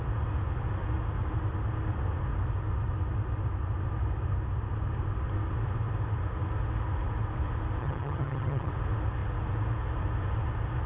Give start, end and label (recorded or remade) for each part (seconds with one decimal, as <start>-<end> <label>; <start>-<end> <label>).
0.0-7.8 recorded; 7.8-8.7 remade; 8.7-10.9 recorded